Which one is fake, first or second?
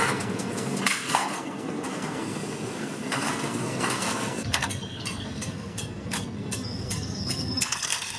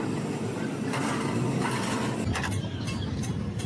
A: first